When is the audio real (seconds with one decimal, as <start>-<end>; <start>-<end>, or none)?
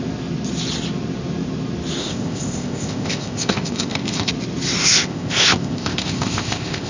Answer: 0.0-2.0; 4.3-4.8